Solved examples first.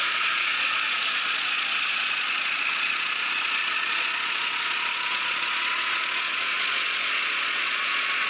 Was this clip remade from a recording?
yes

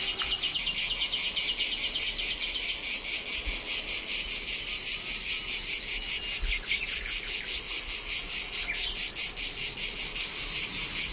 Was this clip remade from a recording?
no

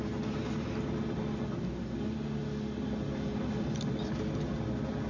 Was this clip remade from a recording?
no